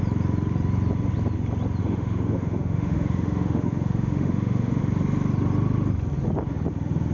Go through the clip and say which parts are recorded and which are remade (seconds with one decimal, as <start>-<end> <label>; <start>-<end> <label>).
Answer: 0.0-1.8 recorded; 1.8-4.8 remade; 4.8-7.1 recorded